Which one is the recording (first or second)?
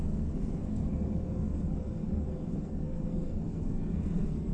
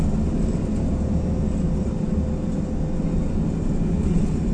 second